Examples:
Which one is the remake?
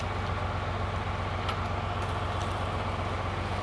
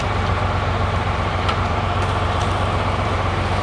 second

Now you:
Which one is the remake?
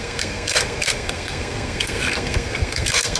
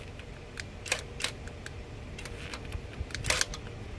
first